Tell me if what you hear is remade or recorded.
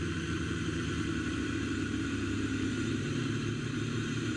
remade